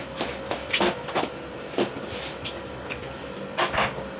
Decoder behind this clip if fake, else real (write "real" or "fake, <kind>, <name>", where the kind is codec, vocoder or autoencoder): real